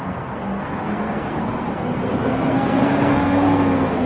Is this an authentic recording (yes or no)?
no